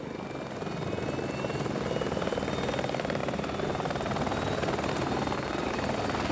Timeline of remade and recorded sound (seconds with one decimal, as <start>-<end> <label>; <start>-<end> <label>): 0.0-6.3 recorded